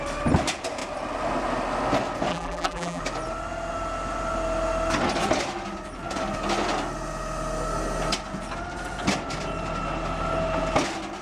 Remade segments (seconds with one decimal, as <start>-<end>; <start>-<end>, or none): 2.3-3.0